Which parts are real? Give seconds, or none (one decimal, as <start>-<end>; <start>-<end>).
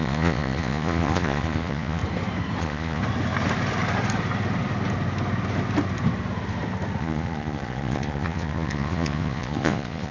2.0-2.6; 3.0-7.0